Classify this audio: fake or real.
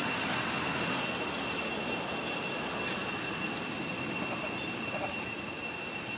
real